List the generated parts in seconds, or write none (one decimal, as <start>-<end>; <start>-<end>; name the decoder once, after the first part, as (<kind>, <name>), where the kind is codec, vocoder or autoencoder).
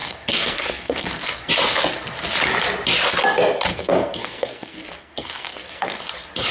0.0-1.5 (codec, SNAC); 3.7-6.0